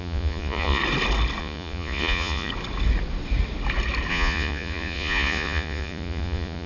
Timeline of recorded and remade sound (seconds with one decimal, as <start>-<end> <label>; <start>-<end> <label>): 0.0-0.8 remade; 0.8-1.4 recorded; 1.4-2.5 remade; 2.5-4.1 recorded; 4.1-6.7 remade